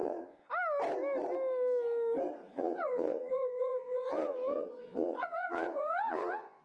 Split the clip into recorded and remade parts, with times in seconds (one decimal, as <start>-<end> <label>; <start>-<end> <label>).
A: 0.0-0.5 remade; 0.5-2.4 recorded; 2.4-6.6 remade